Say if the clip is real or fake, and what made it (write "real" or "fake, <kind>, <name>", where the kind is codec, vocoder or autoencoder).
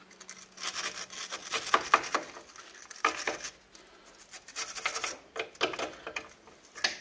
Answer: real